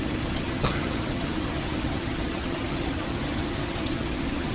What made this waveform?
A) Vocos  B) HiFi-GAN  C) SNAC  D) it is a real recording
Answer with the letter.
B